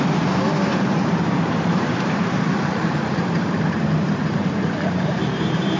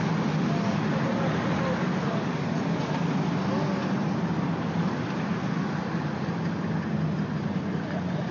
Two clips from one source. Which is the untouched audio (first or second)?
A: second